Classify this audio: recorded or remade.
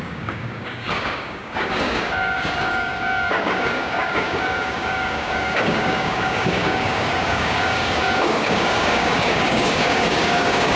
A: remade